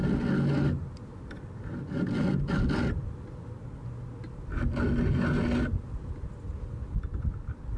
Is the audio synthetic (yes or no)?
no